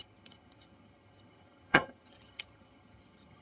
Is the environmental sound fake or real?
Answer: fake